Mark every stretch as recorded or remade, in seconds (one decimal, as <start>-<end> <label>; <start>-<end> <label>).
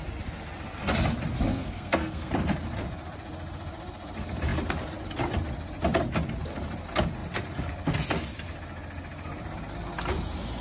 0.0-1.5 recorded; 1.5-2.3 remade; 2.3-10.6 recorded